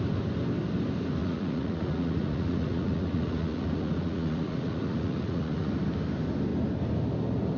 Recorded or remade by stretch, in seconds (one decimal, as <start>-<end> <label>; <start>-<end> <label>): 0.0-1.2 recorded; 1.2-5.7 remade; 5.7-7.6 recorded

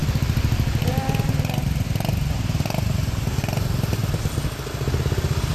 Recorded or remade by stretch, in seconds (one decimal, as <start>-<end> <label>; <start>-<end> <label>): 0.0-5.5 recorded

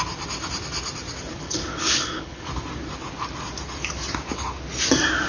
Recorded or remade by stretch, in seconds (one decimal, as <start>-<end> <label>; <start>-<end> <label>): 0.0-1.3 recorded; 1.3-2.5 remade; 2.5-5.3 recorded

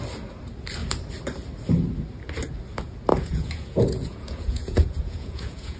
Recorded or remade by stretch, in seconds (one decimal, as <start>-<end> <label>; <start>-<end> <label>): 0.0-3.1 recorded; 3.1-5.8 remade

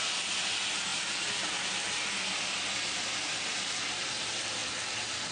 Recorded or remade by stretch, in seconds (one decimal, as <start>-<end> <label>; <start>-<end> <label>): 0.0-5.3 recorded